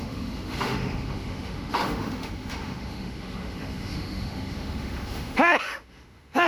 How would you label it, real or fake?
fake